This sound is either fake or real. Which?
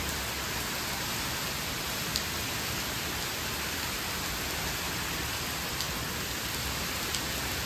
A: real